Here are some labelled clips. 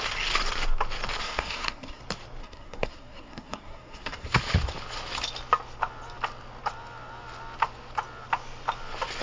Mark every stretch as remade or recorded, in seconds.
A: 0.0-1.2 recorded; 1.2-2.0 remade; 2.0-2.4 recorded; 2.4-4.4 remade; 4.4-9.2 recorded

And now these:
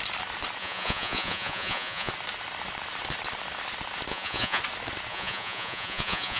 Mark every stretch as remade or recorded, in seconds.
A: 0.0-0.6 recorded; 0.6-2.1 remade; 2.1-4.1 recorded; 4.1-4.6 remade; 4.6-5.1 recorded; 5.1-6.4 remade

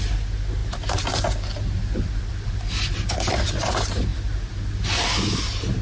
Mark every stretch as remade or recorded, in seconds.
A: 0.0-5.8 recorded

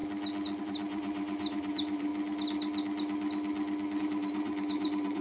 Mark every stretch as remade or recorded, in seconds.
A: 0.0-0.6 recorded; 0.6-2.1 remade; 2.1-4.0 recorded; 4.0-5.2 remade